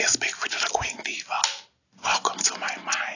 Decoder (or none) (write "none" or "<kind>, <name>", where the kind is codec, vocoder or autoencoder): none